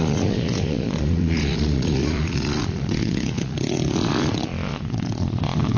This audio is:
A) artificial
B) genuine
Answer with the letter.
A